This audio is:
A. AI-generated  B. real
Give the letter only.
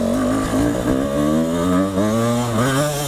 B